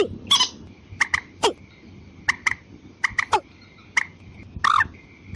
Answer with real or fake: real